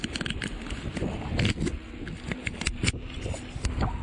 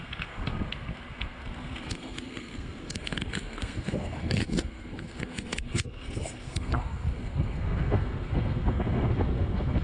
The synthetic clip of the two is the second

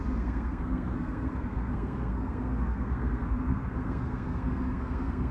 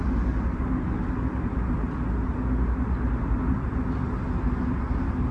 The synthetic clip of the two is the first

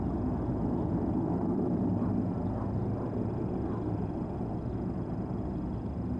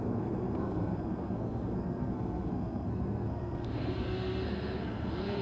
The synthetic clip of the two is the second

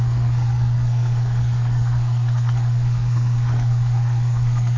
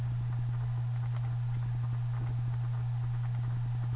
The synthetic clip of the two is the first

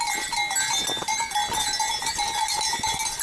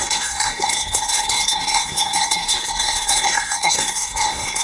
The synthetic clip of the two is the second